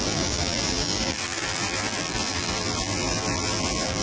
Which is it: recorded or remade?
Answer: remade